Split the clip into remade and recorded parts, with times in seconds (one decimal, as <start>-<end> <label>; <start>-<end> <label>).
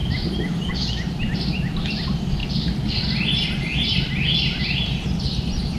0.0-2.4 remade; 2.4-4.6 recorded; 4.6-5.8 remade